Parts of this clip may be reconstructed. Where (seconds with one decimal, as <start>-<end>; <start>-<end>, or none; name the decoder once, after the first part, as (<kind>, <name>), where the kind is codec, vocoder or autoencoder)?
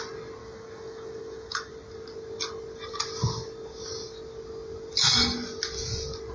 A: 0.4-1.7 (autoencoder, DAC-VAE)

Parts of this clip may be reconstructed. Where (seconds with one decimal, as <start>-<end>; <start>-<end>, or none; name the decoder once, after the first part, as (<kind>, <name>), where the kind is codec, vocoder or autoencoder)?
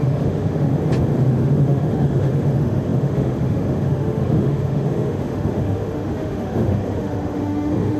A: 0.0-0.7 (autoencoder, DAC-VAE); 1.3-8.0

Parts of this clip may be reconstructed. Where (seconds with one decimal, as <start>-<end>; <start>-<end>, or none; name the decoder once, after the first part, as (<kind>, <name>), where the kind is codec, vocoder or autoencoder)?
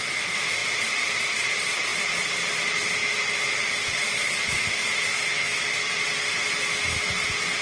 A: 5.1-5.9 (autoencoder, DAC-VAE)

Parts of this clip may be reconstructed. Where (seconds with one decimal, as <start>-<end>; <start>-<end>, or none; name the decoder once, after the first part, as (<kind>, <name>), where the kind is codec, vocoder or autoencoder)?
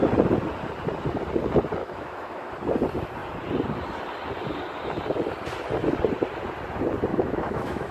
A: 1.8-2.5 (autoencoder, DAC-VAE); 7.1-7.9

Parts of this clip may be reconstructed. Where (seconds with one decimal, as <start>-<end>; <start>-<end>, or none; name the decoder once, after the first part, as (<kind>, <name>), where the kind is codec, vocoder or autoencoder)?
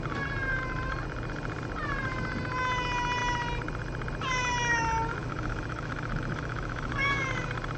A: 5.2-7.2 (autoencoder, DAC-VAE)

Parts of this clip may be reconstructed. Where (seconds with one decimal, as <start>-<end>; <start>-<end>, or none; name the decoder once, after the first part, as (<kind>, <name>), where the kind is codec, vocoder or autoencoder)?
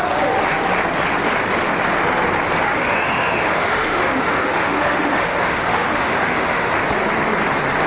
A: 2.7-6.7 (autoencoder, DAC-VAE)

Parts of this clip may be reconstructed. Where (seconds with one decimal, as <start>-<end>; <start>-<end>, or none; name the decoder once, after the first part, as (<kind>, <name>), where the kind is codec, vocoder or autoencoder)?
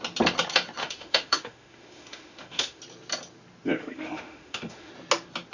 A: 0.8-2.8 (autoencoder, DAC-VAE); 3.8-4.9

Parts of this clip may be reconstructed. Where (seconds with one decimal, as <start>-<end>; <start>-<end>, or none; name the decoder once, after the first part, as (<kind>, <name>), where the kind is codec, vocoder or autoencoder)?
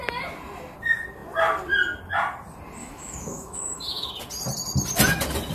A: 2.8-4.1 (autoencoder, DAC-VAE)